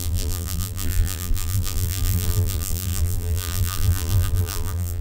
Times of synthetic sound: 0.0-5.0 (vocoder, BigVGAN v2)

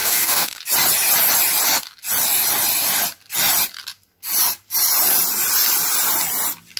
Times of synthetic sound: 0.0-0.6 (codec, DAC)

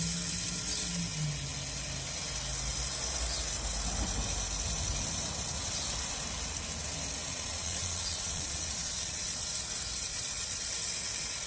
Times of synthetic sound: 7.3-9.4 (vocoder, Vocos); 10.1-10.7

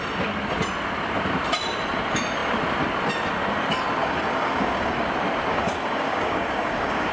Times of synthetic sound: 4.0-5.1 (codec, DAC); 5.5-7.1

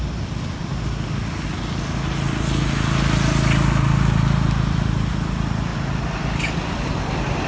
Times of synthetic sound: none

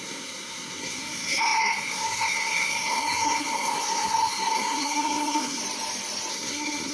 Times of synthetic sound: 0.0-5.6 (codec, SNAC); 6.3-6.9